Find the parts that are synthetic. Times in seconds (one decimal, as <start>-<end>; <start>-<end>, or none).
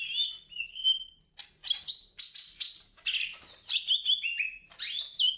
0.7-1.2